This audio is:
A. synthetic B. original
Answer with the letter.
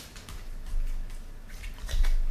B